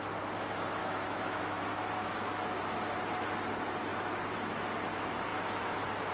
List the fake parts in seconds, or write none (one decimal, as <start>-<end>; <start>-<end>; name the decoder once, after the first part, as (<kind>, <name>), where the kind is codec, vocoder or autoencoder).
0.8-2.6 (autoencoder, DAC-VAE); 3.9-4.7